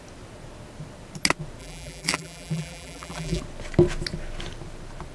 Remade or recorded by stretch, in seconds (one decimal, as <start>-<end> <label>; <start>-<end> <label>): 0.0-1.6 recorded; 1.6-3.4 remade; 3.4-5.1 recorded